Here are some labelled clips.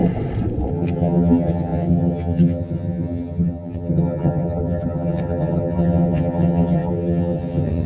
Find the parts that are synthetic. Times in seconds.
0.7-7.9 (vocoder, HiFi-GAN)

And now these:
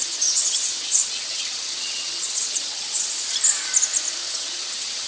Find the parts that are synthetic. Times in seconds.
0.0-3.1 (vocoder, HiFi-GAN); 4.2-5.1